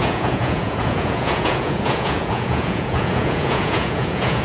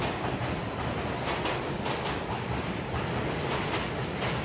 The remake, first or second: first